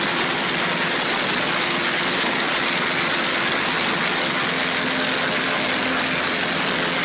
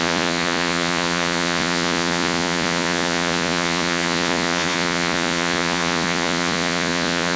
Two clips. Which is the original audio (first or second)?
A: first